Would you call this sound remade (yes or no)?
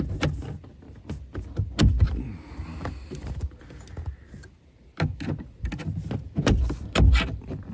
no